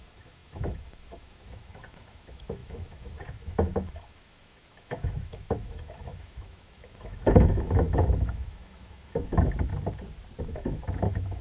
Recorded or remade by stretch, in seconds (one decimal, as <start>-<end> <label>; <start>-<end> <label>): 0.0-9.7 remade; 9.7-10.4 recorded; 10.4-11.4 remade